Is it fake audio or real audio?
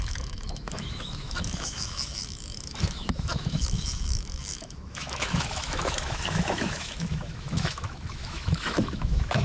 fake